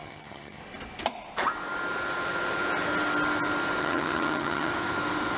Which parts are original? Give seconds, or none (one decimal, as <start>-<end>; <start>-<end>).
0.6-3.8; 4.7-5.4